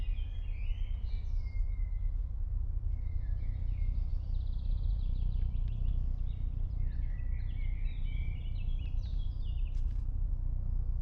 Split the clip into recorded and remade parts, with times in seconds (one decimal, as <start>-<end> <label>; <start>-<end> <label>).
0.0-2.2 recorded; 2.2-4.1 remade; 4.1-4.9 recorded; 4.9-5.9 remade; 5.9-9.1 recorded; 9.1-10.3 remade; 10.3-11.0 recorded